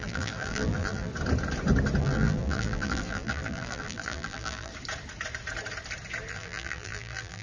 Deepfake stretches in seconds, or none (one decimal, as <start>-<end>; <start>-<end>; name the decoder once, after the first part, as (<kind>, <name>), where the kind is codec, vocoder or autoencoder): 0.0-1.1 (vocoder, BigVGAN v2); 2.0-4.7; 6.3-7.4